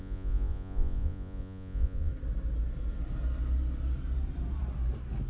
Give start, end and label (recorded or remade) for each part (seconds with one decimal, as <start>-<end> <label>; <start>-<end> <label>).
0.0-2.1 remade; 2.1-5.3 recorded